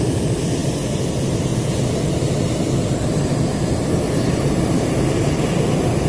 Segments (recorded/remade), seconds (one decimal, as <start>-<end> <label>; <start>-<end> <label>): 0.0-6.1 recorded